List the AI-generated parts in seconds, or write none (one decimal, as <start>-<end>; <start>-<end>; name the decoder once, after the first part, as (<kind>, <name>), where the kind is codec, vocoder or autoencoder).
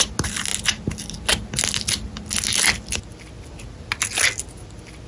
none